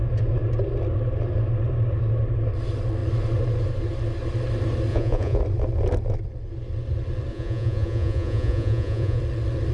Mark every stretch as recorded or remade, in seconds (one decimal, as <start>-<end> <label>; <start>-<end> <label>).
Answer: 0.0-4.9 recorded; 4.9-5.4 remade; 5.4-7.3 recorded; 7.3-9.2 remade; 9.2-9.7 recorded